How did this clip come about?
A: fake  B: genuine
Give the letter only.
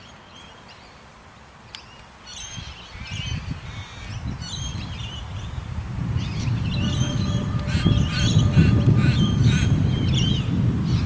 A